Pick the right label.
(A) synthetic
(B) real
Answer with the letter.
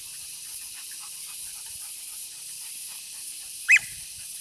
A